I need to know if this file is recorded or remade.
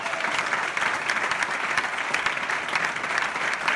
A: recorded